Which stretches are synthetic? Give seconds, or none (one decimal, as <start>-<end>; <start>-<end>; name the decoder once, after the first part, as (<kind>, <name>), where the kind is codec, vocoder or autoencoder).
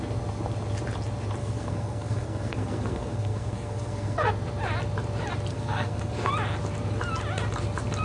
1.4-4.3 (codec, SNAC); 5.5-6.3